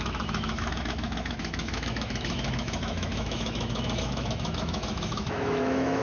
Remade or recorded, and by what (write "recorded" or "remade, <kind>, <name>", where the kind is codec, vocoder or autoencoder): remade, autoencoder, DAC-VAE